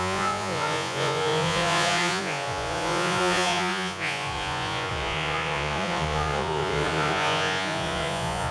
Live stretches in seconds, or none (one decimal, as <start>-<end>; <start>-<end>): none